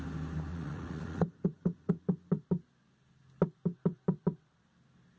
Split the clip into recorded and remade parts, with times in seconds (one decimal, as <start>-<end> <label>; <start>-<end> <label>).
0.0-0.5 recorded; 0.5-2.0 remade; 2.0-5.2 recorded

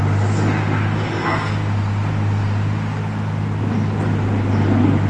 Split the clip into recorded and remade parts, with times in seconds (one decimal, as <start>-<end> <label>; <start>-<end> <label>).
0.0-5.1 recorded